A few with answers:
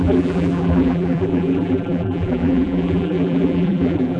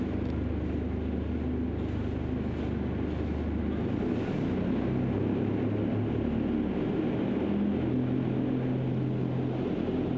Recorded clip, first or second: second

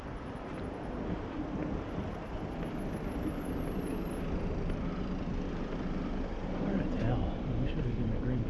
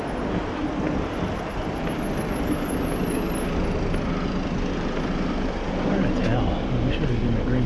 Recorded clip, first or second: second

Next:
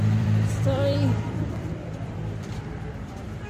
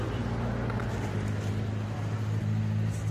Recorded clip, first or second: second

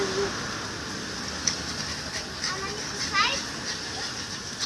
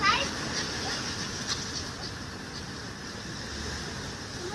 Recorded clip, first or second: first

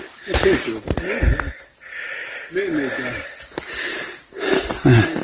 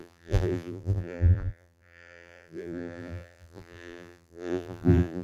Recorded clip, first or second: first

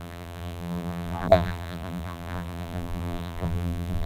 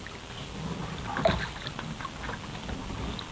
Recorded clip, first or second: second